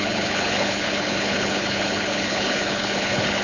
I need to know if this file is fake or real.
fake